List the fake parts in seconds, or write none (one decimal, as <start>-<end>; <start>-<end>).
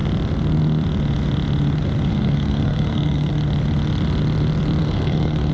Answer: 2.1-3.3; 4.8-5.5